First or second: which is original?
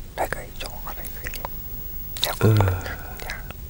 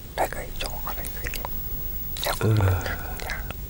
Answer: first